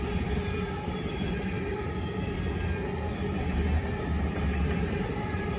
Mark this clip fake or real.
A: real